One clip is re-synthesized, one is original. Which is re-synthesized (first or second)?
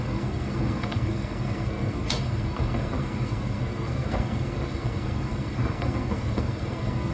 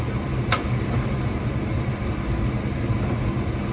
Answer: first